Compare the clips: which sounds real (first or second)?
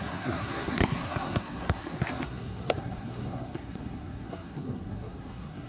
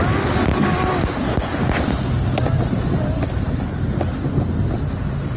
second